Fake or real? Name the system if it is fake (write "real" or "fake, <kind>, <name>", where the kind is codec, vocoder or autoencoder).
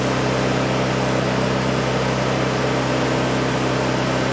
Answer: real